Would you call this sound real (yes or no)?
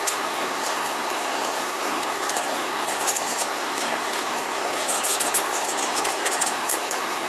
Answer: no